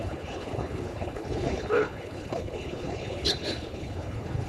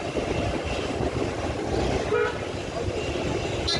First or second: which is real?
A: second